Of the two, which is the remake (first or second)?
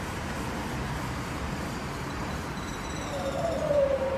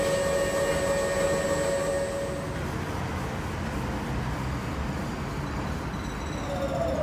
first